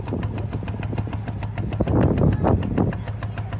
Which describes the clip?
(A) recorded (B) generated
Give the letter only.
A